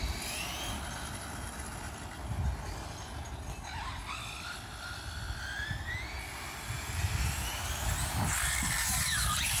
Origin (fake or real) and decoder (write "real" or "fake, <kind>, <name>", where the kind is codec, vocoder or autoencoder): real